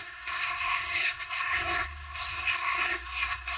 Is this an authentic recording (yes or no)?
no